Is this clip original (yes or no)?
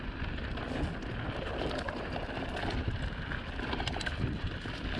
yes